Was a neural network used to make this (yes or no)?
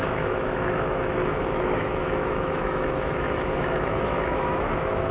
yes